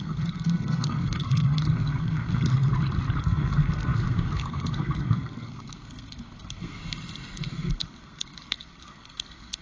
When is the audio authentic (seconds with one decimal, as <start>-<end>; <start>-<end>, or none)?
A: 2.7-3.2; 6.8-7.5